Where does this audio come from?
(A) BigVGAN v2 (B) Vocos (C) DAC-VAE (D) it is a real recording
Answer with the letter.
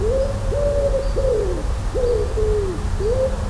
D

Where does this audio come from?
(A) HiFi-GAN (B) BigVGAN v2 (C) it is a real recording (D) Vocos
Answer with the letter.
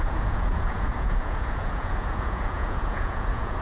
D